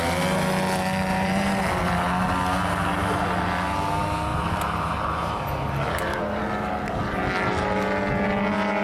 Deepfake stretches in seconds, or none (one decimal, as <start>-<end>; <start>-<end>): 1.1-1.7; 4.3-6.4